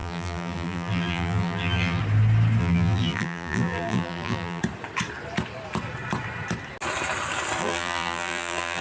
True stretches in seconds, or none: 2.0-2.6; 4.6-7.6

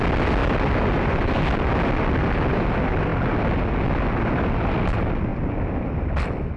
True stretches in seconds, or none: 0.0-0.4; 1.3-5.3

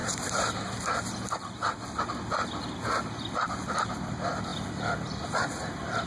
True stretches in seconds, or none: 0.0-3.3

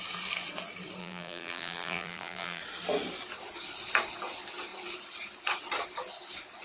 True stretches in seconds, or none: 0.0-1.0; 2.6-6.6

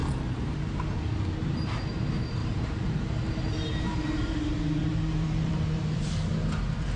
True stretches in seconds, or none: 2.0-2.4; 6.1-7.0

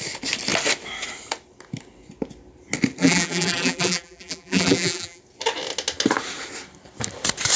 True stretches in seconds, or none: 0.0-3.0; 5.2-7.6